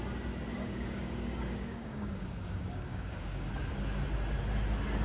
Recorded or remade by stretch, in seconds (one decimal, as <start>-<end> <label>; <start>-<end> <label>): 0.0-0.5 recorded; 0.5-3.5 remade; 3.5-5.0 recorded